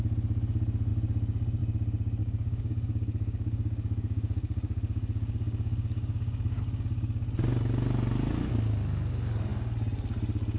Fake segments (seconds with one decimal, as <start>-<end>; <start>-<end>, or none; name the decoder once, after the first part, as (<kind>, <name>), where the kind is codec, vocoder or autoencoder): 2.2-6.6 (codec, DAC)